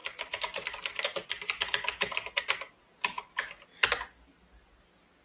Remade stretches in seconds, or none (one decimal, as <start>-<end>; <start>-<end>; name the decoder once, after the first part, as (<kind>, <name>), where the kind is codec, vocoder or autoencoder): none